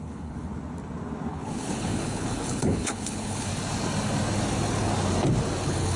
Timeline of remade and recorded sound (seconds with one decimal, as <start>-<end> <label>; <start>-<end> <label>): 0.0-0.5 remade; 0.5-1.3 recorded; 1.3-3.5 remade; 3.5-5.6 recorded; 5.6-6.0 remade